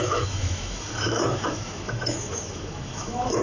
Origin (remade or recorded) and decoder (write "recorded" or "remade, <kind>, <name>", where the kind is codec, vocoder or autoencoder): remade, autoencoder, DAC-VAE